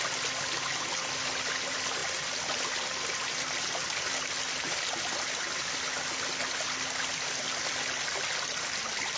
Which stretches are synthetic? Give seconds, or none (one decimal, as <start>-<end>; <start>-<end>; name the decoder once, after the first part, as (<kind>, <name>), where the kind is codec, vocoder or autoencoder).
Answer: none